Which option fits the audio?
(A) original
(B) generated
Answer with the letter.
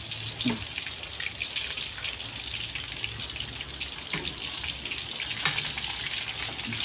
A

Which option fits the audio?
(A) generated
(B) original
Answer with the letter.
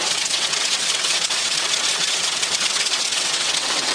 A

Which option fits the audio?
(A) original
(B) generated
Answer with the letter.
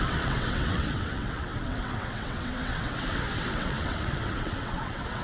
B